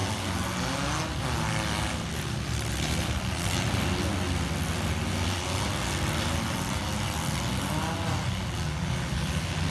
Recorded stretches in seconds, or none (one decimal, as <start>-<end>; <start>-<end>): 0.0-9.7